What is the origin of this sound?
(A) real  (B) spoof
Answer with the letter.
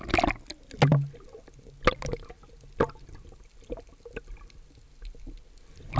A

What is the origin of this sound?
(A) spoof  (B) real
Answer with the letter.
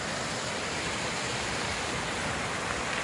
B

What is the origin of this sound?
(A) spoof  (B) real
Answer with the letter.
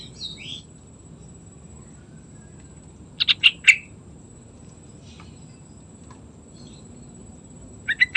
B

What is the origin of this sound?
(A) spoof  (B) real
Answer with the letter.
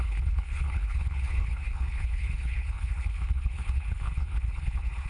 A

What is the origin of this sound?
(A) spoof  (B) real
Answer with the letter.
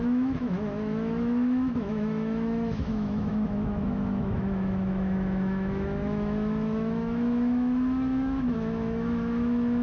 A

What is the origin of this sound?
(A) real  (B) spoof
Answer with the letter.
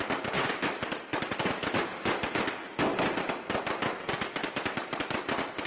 A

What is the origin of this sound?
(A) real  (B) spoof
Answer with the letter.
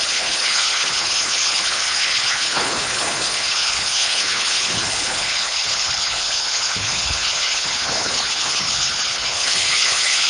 B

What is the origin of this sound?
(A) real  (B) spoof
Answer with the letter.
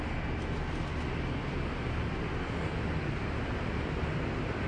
A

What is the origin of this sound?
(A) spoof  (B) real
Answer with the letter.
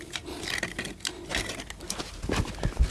B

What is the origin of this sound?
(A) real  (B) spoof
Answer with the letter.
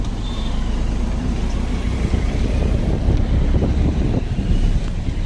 B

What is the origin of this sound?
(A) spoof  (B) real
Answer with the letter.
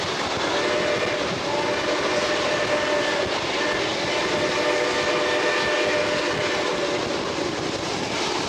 B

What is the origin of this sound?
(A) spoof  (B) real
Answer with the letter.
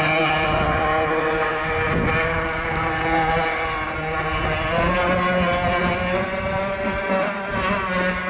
B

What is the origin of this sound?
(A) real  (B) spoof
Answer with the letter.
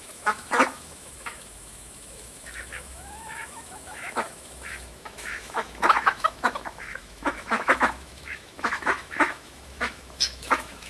B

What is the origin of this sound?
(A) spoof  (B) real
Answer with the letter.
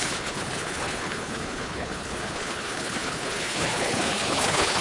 A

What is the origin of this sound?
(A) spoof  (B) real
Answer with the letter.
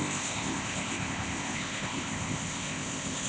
A